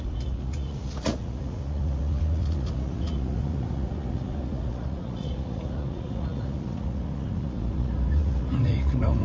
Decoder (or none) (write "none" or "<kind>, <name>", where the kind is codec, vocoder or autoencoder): vocoder, Vocos